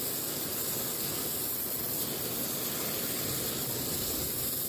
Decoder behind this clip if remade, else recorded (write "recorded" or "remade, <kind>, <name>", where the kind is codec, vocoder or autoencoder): recorded